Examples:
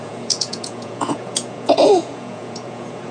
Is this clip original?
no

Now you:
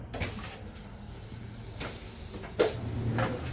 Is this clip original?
yes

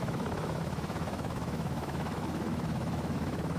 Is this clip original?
no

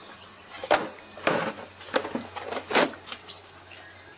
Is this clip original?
yes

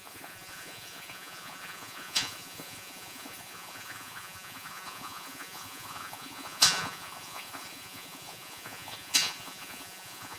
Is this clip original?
no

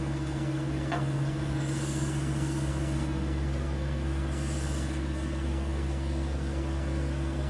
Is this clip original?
no